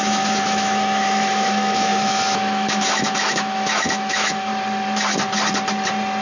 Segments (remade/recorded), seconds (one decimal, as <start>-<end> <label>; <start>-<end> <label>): 0.0-4.5 remade; 4.5-6.2 recorded